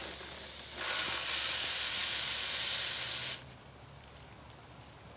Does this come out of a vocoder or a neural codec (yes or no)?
no